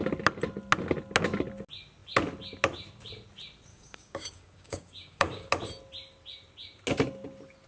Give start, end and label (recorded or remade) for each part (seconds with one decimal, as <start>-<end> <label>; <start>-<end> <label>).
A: 0.0-3.7 recorded; 3.7-5.5 remade; 5.5-7.7 recorded